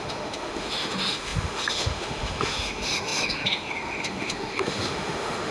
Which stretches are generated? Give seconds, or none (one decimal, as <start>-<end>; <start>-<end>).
0.0-5.5